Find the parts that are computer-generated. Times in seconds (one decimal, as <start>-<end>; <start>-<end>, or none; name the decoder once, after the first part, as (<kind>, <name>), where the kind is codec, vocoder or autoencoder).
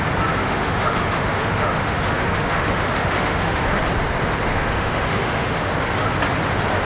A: 0.4-3.8 (autoencoder, DAC-VAE); 4.5-5.7